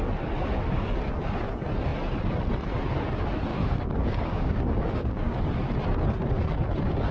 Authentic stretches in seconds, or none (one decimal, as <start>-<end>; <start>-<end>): 0.0-3.5; 5.4-7.1